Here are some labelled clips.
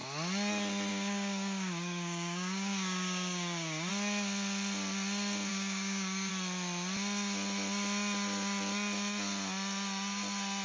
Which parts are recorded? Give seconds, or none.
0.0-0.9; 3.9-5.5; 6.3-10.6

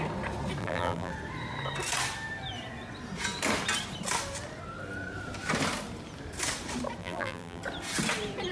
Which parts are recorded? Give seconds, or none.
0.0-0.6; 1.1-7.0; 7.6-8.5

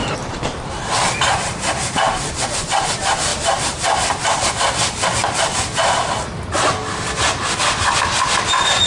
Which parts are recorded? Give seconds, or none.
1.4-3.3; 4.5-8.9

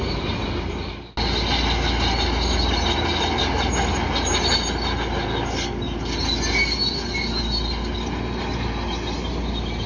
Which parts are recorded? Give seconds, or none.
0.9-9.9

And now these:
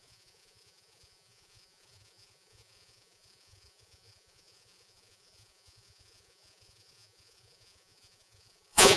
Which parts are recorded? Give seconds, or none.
none

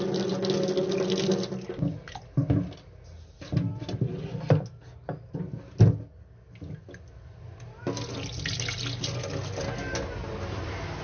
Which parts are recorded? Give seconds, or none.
0.0-11.0

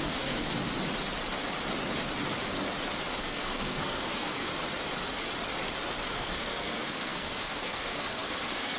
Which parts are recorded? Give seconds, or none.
0.5-3.2; 4.5-6.1

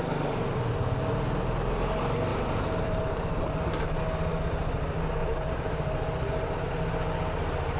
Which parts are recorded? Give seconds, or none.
0.0-2.3; 4.0-5.2; 6.7-7.8